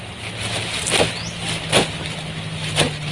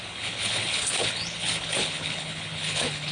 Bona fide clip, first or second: first